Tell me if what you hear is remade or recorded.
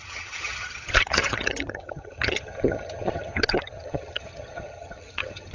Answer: remade